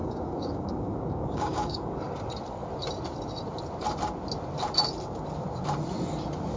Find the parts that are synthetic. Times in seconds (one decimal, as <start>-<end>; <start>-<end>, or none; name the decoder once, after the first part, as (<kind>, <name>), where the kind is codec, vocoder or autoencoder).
0.0-2.0 (codec, DAC)

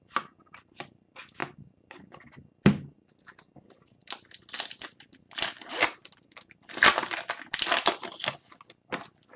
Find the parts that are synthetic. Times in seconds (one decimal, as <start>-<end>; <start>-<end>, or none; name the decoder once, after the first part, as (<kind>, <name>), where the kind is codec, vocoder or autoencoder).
none